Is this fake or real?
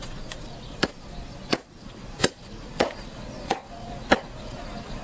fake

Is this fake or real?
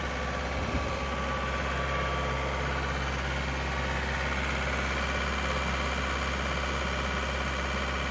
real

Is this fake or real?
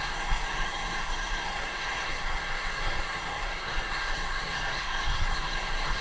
fake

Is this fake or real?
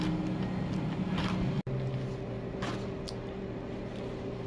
real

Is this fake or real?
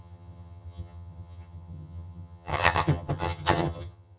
fake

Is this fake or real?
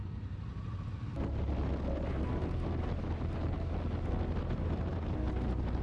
real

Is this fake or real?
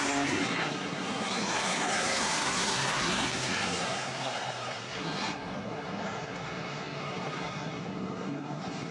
fake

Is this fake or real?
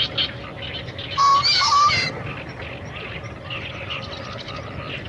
real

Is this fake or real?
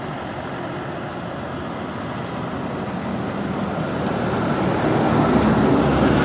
real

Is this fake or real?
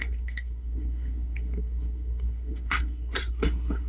fake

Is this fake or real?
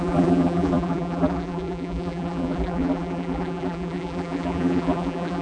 fake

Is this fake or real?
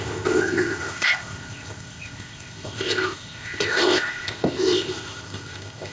fake